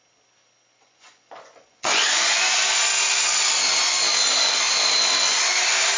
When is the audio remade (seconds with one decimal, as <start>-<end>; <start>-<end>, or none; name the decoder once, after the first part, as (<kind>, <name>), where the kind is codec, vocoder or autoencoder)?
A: 0.7-2.7 (vocoder, Vocos)